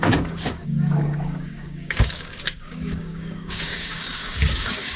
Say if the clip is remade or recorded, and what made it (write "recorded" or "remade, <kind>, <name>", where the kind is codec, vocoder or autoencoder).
remade, codec, DAC